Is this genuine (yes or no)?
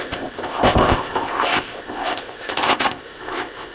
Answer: no